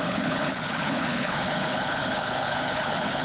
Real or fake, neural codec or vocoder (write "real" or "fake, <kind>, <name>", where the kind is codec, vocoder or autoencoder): fake, codec, HILCodec